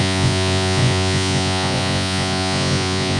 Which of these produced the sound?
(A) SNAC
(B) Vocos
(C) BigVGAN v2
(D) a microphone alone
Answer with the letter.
B